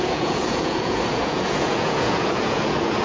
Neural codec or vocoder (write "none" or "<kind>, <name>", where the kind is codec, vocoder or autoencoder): vocoder, Vocos